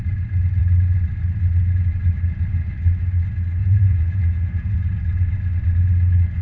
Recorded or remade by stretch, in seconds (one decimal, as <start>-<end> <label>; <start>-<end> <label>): 0.0-3.6 recorded; 3.6-4.9 remade; 4.9-6.4 recorded